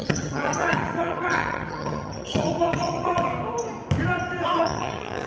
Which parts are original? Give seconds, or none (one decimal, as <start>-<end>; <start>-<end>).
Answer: 3.3-4.6